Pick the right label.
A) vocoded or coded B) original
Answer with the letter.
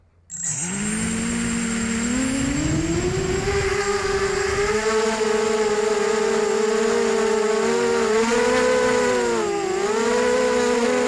B